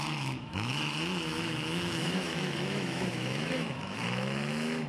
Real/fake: fake